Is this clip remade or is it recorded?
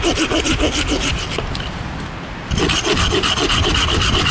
recorded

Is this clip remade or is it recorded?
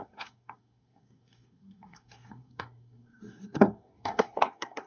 remade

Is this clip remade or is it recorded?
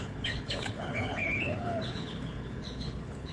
remade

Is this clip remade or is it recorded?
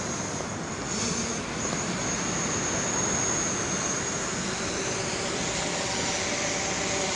recorded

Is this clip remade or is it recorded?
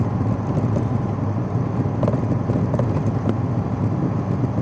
recorded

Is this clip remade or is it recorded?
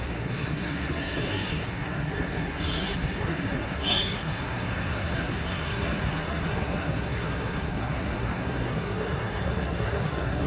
remade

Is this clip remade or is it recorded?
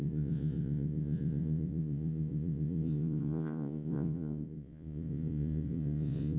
remade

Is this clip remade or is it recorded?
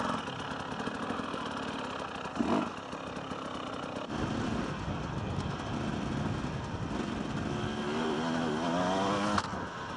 recorded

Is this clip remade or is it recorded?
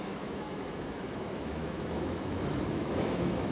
remade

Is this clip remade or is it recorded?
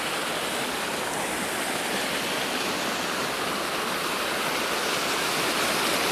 recorded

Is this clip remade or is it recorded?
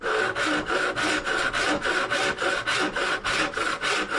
recorded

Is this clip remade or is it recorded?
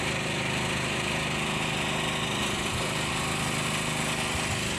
remade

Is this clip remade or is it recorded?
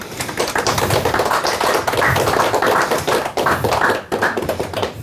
recorded